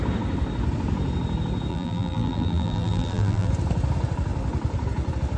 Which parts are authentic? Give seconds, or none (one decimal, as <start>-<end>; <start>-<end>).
0.0-1.7; 3.5-5.4